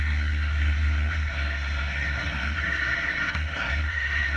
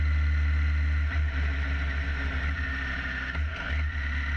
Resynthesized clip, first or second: first